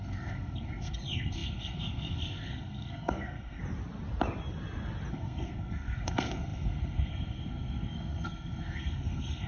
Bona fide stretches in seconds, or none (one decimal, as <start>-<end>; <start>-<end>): 3.6-5.1